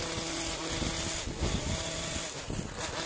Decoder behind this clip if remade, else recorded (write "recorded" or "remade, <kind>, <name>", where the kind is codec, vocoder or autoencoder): recorded